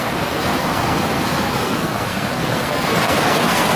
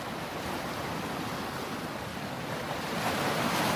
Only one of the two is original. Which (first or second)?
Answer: second